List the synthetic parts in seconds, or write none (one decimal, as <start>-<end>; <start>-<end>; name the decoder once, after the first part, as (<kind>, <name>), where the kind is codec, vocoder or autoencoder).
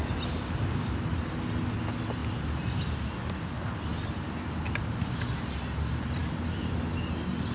none